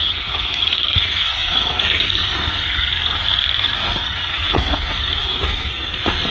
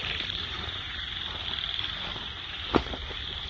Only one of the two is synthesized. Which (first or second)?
first